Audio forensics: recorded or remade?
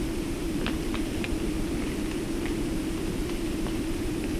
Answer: recorded